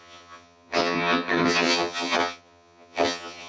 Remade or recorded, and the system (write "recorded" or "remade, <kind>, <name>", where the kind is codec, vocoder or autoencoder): remade, vocoder, HiFi-GAN